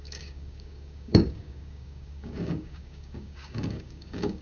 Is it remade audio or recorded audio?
remade